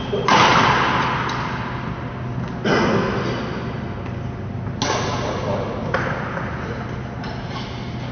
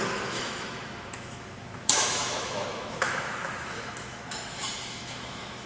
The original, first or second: first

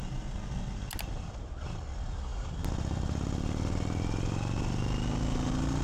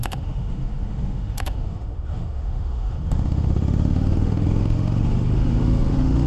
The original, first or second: first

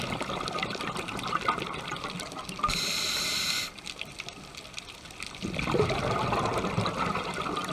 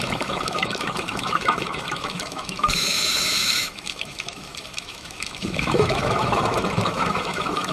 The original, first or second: first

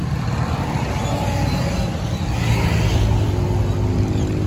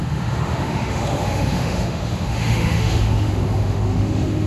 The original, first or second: first